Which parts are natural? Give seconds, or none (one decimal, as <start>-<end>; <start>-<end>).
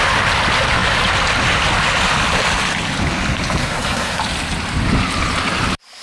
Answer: 0.0-3.6; 4.2-6.0